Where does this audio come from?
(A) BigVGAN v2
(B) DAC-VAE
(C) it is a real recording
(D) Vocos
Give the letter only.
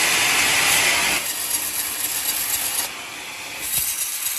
C